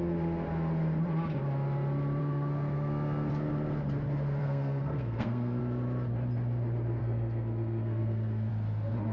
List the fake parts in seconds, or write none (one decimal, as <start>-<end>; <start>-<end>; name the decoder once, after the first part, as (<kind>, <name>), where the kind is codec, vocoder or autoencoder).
2.2-3.3 (codec, SNAC); 4.4-5.6; 7.0-8.5